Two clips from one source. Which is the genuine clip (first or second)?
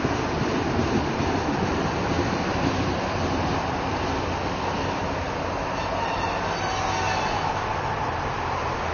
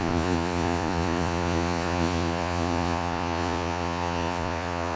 first